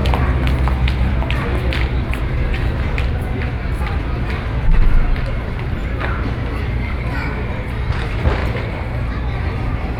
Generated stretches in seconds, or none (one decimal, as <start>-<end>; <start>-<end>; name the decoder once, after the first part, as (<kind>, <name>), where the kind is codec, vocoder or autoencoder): 2.2-5.8 (vocoder, BigVGAN v2); 7.5-8.4; 9.4-10.0

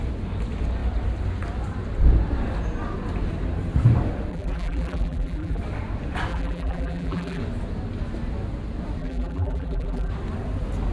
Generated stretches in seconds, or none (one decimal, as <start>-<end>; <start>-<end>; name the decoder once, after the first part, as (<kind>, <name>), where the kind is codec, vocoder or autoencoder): 4.3-5.6 (vocoder, BigVGAN v2); 6.3-7.4; 9.0-10.1

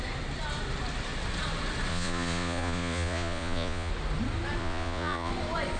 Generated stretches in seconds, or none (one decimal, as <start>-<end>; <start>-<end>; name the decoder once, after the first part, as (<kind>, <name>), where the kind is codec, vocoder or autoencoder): 1.9-3.9 (vocoder, Vocos); 4.6-5.3

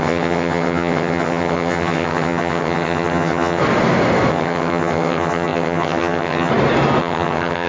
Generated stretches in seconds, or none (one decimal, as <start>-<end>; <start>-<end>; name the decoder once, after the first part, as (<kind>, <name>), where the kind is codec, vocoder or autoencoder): 0.0-3.6 (vocoder, HiFi-GAN); 4.3-6.5; 7.0-7.7

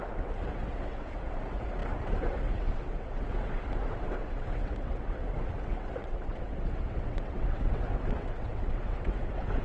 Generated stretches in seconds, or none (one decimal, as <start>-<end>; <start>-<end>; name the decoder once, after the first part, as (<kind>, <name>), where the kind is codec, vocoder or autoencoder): 0.0-9.6 (vocoder, WaveNeXt)

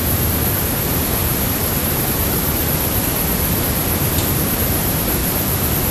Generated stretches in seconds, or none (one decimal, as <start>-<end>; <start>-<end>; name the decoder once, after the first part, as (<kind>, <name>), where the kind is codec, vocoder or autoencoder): 0.0-2.6 (vocoder, BigVGAN v2); 4.4-5.2